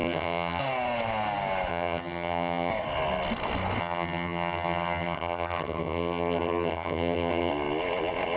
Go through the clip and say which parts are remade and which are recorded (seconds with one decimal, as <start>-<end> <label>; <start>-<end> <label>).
0.0-0.6 remade; 0.6-1.7 recorded; 1.7-2.7 remade; 2.7-3.8 recorded; 3.8-7.5 remade; 7.5-8.4 recorded